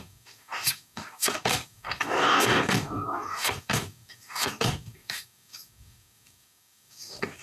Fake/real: fake